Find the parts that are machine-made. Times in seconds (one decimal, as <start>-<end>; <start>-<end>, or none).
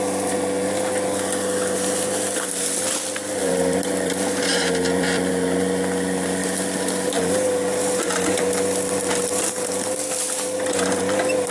3.4-5.3